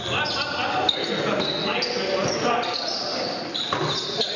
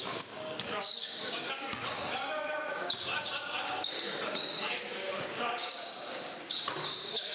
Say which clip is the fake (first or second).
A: second